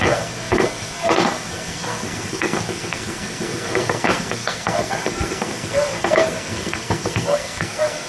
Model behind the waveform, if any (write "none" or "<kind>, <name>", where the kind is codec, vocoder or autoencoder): codec, SNAC